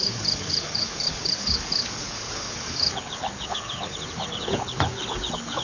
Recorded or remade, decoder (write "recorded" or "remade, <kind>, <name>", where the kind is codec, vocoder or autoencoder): remade, codec, HILCodec